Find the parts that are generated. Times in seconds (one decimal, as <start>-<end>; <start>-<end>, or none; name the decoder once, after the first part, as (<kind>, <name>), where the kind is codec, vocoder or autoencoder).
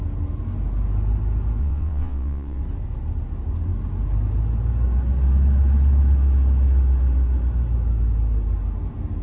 1.6-2.6 (vocoder, WaveNeXt)